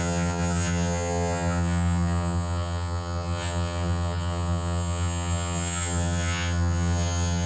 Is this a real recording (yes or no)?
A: no